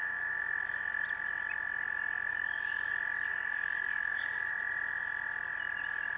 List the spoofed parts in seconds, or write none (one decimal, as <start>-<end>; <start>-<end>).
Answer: 2.3-2.9; 3.3-4.5

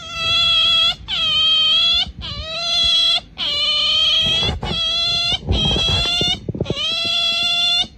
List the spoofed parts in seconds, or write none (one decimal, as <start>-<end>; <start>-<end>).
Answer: none

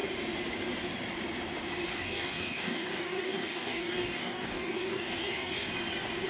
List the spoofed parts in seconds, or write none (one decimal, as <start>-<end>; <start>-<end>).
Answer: 1.9-5.7